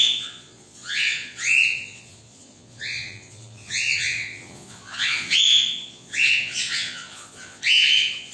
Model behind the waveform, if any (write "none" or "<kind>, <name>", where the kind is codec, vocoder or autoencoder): vocoder, Vocos